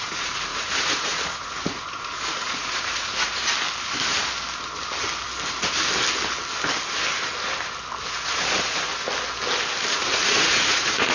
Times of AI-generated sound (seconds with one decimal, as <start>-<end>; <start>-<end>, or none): 0.0-3.4; 8.0-8.9; 9.9-11.1